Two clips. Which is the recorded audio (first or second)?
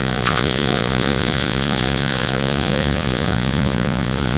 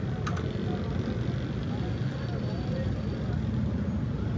second